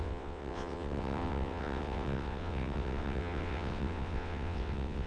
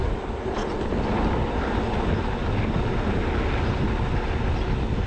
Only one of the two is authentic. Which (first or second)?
second